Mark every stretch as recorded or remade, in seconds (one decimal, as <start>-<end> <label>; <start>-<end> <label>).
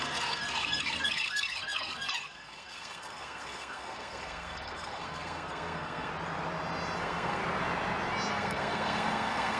0.0-6.1 remade; 6.1-7.0 recorded; 7.0-7.4 remade; 7.4-8.3 recorded; 8.3-9.6 remade